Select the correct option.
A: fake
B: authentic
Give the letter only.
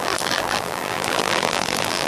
A